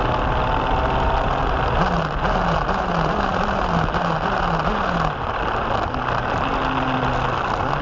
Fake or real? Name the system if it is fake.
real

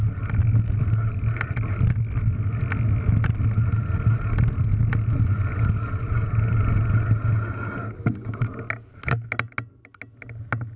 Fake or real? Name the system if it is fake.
real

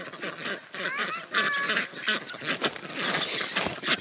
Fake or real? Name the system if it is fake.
real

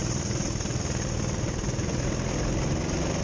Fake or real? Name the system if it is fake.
real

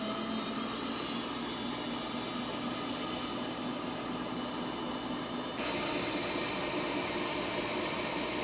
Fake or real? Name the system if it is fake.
real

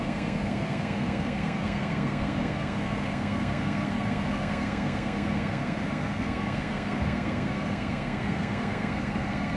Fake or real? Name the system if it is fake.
fake, codec, SNAC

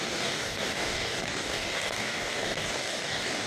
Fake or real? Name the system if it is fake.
fake, codec, DAC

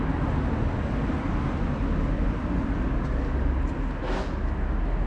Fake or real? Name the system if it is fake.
real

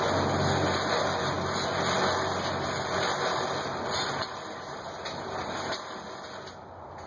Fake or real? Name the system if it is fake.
real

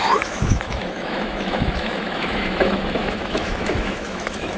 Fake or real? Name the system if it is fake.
fake, autoencoder, DAC-VAE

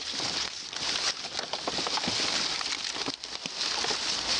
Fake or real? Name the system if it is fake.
real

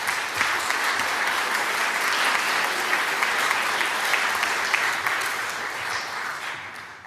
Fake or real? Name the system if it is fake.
real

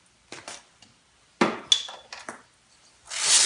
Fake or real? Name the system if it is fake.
real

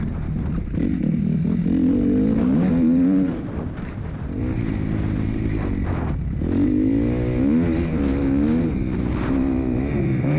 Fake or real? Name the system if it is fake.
real